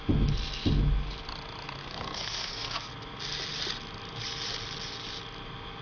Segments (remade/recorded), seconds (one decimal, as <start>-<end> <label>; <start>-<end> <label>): 0.0-1.8 recorded; 1.8-2.9 remade; 2.9-5.8 recorded